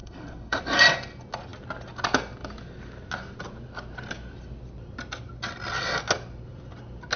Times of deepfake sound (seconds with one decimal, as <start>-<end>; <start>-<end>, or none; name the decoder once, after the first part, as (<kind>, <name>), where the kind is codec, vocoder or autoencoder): 0.0-0.6 (codec, SNAC)